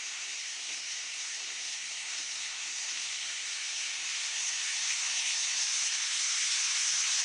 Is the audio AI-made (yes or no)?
yes